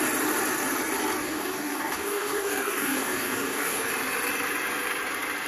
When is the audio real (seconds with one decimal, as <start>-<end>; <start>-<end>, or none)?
0.0-1.2; 3.9-5.5